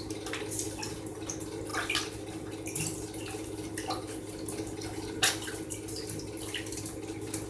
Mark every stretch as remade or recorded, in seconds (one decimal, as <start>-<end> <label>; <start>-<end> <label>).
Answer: 0.0-7.5 recorded